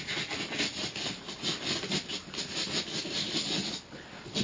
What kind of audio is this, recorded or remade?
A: recorded